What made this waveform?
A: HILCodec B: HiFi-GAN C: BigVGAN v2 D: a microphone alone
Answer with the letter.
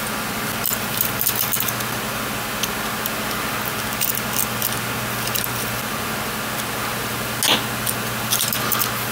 D